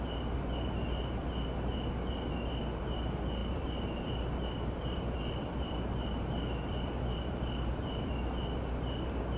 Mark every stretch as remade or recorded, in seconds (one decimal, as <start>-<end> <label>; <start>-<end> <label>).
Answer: 0.0-3.4 recorded; 3.4-8.2 remade; 8.2-9.4 recorded